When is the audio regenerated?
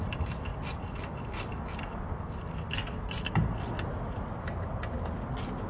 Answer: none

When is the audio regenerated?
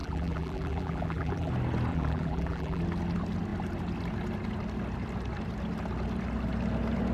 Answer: 0.0-1.5 (vocoder, BigVGAN v2); 1.9-2.8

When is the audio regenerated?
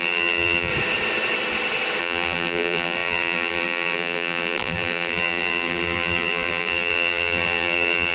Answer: 0.0-0.7 (vocoder, BigVGAN v2); 2.0-8.1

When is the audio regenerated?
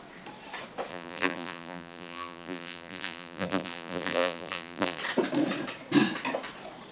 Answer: 0.9-5.0 (vocoder, BigVGAN v2)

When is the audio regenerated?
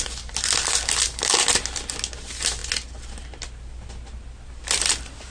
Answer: none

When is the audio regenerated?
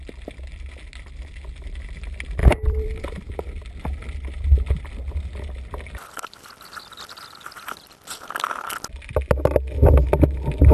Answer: 2.4-3.6 (vocoder, BigVGAN v2)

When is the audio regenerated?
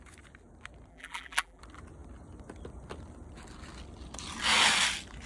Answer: 0.9-1.6 (vocoder, BigVGAN v2)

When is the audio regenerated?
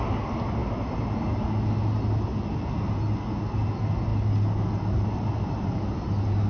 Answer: 0.6-1.2 (vocoder, BigVGAN v2)